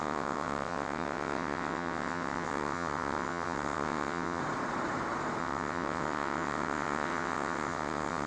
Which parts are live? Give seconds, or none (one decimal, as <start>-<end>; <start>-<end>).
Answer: 4.4-5.4